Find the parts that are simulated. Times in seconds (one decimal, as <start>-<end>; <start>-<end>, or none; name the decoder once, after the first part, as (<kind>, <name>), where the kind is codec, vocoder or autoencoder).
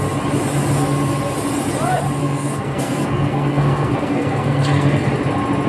2.2-5.1 (codec, SNAC)